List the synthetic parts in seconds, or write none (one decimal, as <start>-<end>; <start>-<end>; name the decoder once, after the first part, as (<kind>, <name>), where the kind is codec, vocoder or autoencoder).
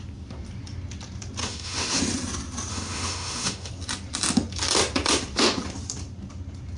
1.4-2.0 (autoencoder, DAC-VAE); 2.7-3.7